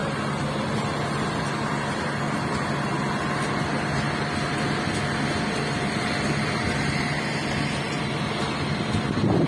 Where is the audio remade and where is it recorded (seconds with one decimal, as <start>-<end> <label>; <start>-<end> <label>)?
0.0-9.5 recorded